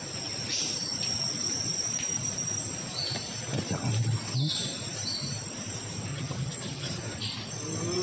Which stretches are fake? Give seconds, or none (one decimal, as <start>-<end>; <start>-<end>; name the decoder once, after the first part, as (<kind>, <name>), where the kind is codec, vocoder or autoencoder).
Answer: 6.1-7.0 (vocoder, HiFi-GAN)